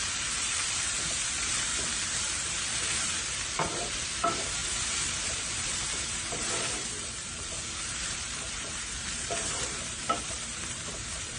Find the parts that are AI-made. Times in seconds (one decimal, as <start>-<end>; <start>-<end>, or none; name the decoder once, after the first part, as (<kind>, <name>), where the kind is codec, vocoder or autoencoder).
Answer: 0.0-1.7 (vocoder, BigVGAN v2); 2.9-11.4